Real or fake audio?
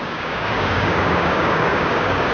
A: fake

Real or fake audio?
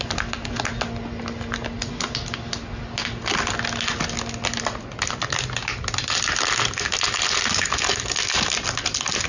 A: real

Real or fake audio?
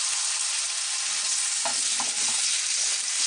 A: real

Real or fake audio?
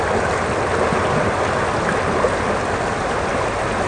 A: real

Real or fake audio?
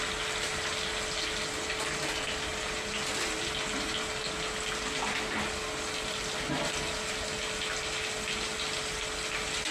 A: real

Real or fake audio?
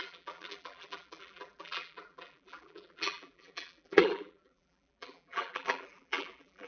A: fake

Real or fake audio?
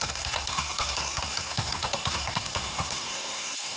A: fake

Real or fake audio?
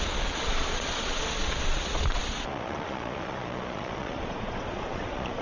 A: fake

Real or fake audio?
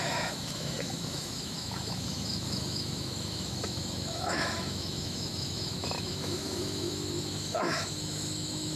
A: fake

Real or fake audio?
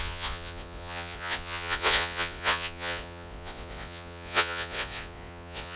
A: fake